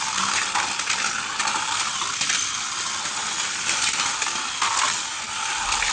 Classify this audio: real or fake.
real